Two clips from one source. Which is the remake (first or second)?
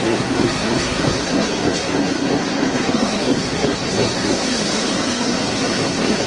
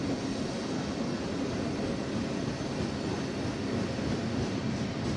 first